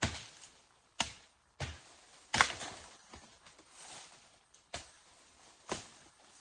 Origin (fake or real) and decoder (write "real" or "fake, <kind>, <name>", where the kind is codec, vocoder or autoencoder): real